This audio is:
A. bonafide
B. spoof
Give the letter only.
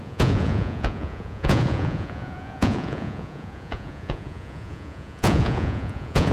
B